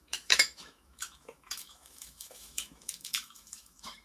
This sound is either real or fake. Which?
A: fake